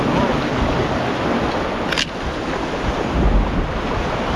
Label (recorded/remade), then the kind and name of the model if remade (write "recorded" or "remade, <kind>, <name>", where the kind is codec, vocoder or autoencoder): recorded